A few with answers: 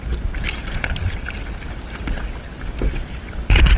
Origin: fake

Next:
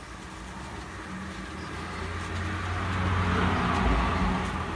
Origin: real